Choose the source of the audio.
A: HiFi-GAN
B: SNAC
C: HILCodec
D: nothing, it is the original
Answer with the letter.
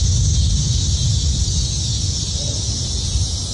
D